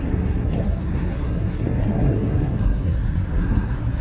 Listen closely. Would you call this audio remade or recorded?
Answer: remade